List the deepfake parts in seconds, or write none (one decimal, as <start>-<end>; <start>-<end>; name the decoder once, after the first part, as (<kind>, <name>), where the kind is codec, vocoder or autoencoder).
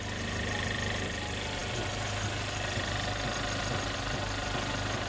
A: none